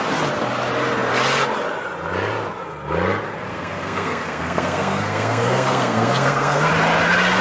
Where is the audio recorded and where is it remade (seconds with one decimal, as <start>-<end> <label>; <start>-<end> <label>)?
0.0-3.5 recorded; 3.5-6.7 remade; 6.7-7.4 recorded